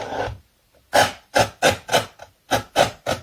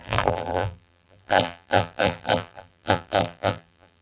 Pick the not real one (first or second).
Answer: second